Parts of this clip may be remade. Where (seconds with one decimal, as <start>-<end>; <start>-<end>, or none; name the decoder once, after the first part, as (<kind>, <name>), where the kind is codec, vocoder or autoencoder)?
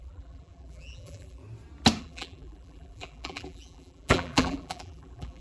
0.0-1.4 (vocoder, BigVGAN v2); 2.0-5.4